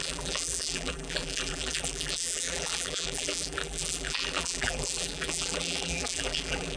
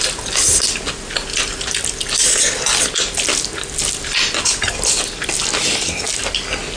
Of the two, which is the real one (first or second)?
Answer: second